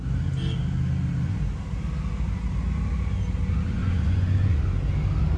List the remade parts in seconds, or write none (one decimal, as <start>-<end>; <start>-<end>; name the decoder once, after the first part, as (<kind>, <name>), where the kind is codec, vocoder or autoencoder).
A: 3.8-4.6 (vocoder, Vocos)